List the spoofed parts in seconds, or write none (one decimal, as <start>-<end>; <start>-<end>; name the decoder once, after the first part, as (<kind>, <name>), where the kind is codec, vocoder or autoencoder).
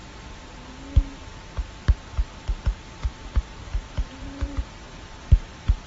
3.4-5.9 (vocoder, BigVGAN v2)